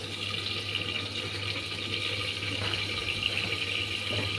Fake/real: real